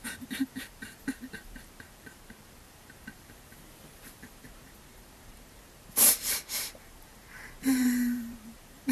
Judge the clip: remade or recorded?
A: remade